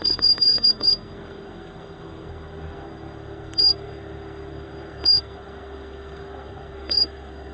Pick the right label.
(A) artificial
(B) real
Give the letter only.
A